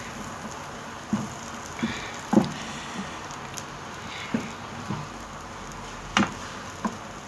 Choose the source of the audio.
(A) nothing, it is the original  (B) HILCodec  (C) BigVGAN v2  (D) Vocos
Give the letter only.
A